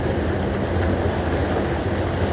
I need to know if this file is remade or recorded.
recorded